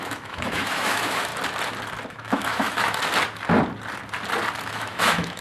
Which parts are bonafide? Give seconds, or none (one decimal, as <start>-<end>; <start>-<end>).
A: 1.3-2.1; 3.0-4.7